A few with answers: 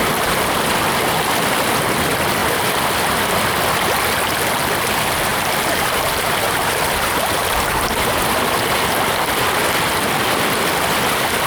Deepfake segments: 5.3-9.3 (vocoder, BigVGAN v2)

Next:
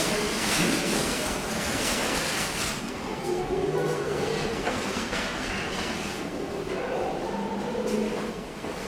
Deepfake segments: 0.0-6.6 (codec, SNAC); 8.3-8.9

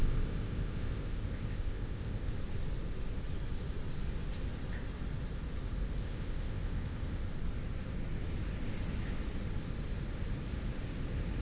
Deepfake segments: 0.0-2.3 (codec, ZipCodec); 6.0-7.2

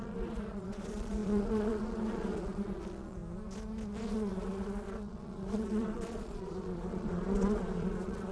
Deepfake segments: 0.0-3.2 (vocoder, Vocos); 4.1-8.3

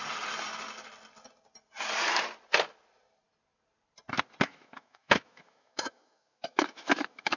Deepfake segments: 4.4-7.4 (autoencoder, DAC-VAE)

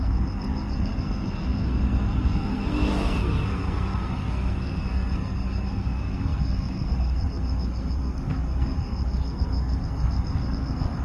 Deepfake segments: 0.0-11.0 (codec, SNAC)

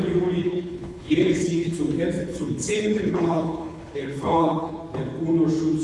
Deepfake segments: 0.4-1.8 (codec, HILCodec); 2.2-4.8

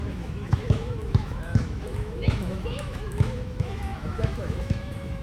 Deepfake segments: 0.0-5.2 (autoencoder, DAC-VAE)